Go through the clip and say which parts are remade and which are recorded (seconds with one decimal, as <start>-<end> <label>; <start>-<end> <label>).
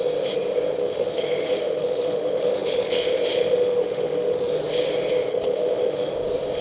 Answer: 0.0-0.8 recorded; 0.8-4.5 remade; 4.5-5.3 recorded; 5.3-6.1 remade; 6.1-6.6 recorded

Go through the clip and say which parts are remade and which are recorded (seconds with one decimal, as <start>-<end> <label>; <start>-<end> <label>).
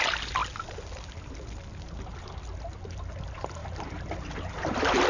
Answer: 0.0-0.4 recorded; 0.4-1.5 remade; 1.5-3.6 recorded; 3.6-5.1 remade